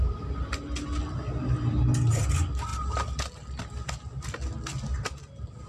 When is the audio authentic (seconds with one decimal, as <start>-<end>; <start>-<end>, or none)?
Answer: 0.0-2.7; 3.6-5.7

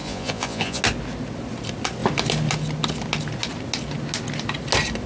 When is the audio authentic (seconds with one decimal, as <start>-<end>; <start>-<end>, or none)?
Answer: 0.8-5.1